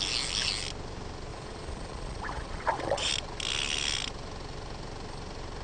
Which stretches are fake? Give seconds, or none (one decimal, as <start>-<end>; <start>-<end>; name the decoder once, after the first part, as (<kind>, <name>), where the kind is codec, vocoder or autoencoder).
1.3-3.1 (vocoder, Vocos)